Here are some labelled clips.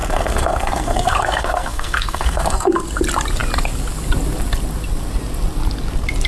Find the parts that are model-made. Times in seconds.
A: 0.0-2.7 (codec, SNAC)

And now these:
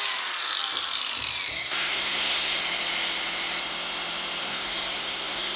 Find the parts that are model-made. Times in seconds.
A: 1.5-2.6 (codec, SNAC); 4.4-5.6

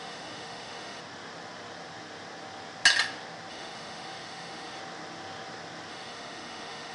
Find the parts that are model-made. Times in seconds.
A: 0.0-1.0 (autoencoder, DAC-VAE); 3.5-4.8; 5.9-6.9

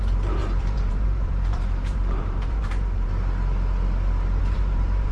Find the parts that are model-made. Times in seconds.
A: 0.0-3.1 (vocoder, BigVGAN v2); 4.4-5.1